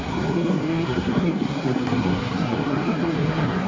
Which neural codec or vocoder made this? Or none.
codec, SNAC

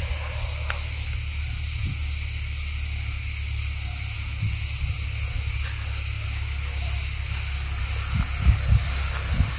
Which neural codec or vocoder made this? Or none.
none